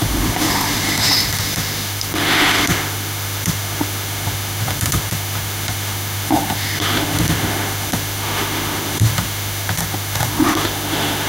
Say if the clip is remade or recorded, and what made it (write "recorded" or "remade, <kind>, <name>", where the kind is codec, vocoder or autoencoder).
remade, autoencoder, DAC-VAE